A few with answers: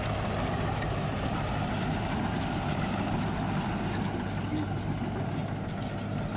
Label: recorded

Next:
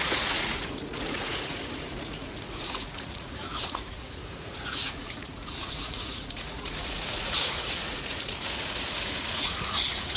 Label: remade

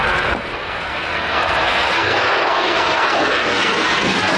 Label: remade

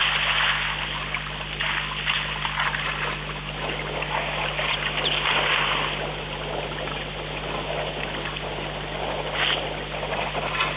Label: recorded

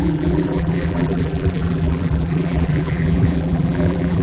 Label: remade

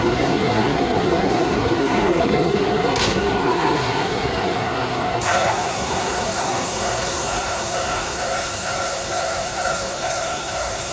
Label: remade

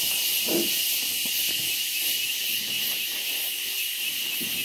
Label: recorded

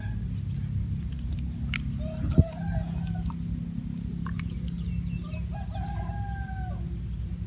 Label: recorded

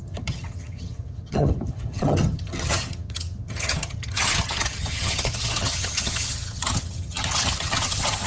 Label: remade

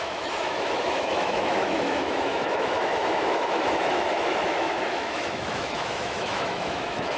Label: remade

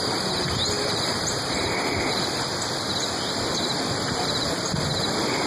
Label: recorded